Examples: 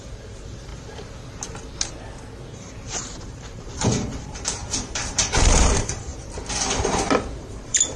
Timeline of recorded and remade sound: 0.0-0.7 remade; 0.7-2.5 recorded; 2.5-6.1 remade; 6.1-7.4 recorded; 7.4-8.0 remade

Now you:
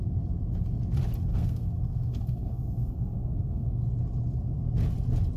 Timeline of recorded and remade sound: 0.0-1.3 recorded; 1.3-3.7 remade; 3.7-5.4 recorded

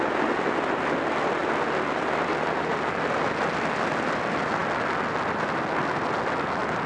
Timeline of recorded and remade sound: 0.0-6.9 recorded